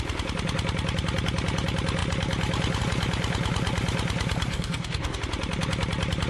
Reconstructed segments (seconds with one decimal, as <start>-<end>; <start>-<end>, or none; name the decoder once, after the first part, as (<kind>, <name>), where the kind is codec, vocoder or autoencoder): 4.5-5.2 (codec, DAC)